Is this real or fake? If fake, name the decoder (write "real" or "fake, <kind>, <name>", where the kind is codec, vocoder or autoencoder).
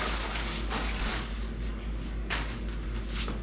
fake, codec, DAC